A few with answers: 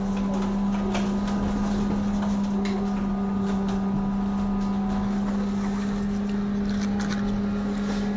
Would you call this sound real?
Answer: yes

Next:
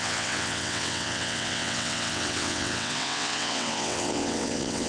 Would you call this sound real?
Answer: no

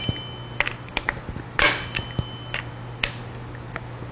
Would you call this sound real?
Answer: yes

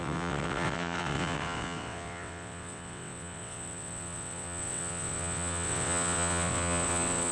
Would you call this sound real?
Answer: no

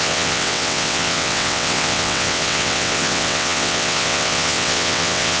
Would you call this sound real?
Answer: no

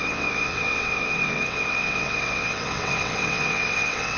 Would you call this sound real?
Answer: no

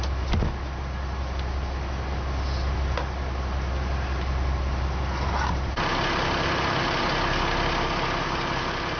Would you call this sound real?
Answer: yes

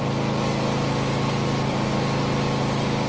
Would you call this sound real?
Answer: yes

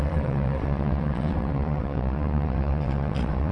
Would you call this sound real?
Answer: no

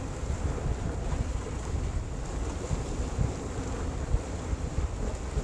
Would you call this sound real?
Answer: yes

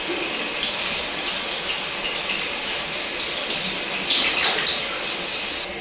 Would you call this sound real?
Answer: yes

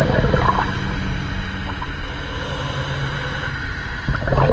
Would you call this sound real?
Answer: yes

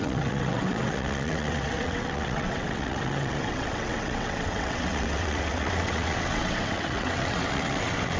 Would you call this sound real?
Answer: no